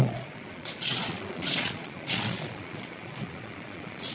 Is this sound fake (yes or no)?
yes